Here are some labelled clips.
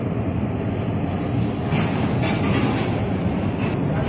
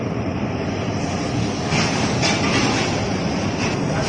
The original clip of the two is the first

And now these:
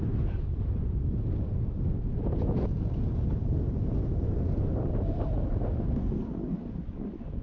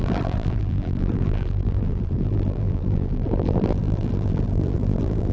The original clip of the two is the first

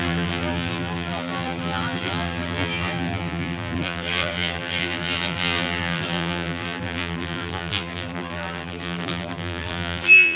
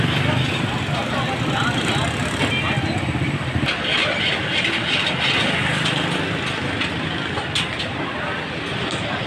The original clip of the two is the second